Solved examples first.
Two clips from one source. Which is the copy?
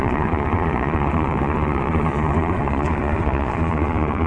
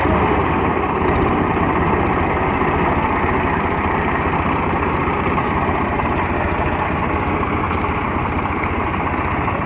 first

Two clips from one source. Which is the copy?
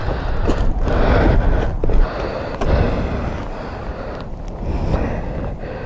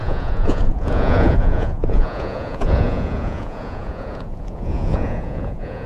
second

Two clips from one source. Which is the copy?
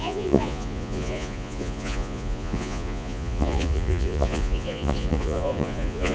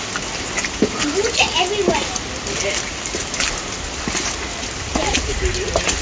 first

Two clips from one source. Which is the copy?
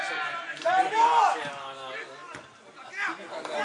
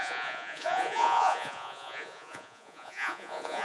second